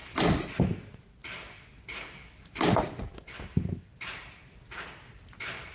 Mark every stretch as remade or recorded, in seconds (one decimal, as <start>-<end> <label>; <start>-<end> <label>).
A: 0.0-5.7 recorded

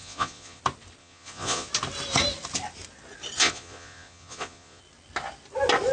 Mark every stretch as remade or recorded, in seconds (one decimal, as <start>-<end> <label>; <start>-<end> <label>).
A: 0.0-0.6 remade; 0.6-1.0 recorded; 1.0-1.7 remade; 1.7-3.4 recorded; 3.4-4.8 remade; 4.8-5.9 recorded

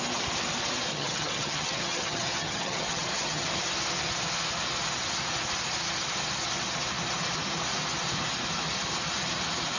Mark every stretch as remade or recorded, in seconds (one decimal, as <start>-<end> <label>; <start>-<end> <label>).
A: 0.0-0.9 recorded; 0.9-3.5 remade; 3.5-9.8 recorded

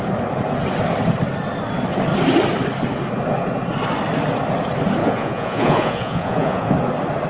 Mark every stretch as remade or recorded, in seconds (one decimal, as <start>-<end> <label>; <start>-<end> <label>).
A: 0.0-5.0 recorded; 5.0-6.7 remade; 6.7-7.3 recorded

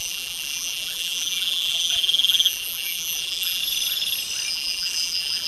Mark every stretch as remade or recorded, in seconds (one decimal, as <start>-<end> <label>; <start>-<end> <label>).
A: 0.0-3.6 remade; 3.6-4.5 recorded; 4.5-5.5 remade

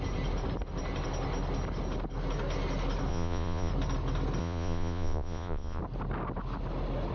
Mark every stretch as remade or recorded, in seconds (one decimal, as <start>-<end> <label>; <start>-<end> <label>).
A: 0.0-3.1 recorded; 3.1-3.7 remade; 3.7-4.4 recorded; 4.4-5.8 remade; 5.8-7.1 recorded

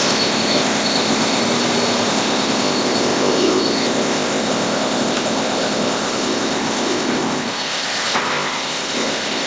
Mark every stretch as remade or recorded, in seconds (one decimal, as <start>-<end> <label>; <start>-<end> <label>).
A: 0.0-1.4 remade; 1.4-2.1 recorded; 2.1-9.5 remade

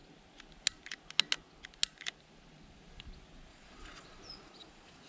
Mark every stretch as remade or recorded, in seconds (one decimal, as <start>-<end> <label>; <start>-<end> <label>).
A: 0.0-3.5 recorded; 3.5-5.1 remade